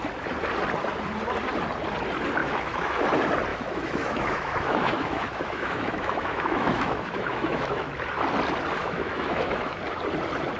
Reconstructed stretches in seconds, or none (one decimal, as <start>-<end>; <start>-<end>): 2.4-3.0; 3.5-7.9; 8.8-9.8